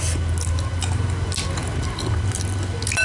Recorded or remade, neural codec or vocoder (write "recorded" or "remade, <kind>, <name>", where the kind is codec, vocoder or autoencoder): recorded